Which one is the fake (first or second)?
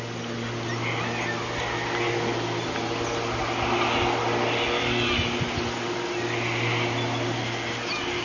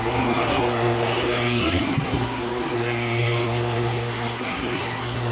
second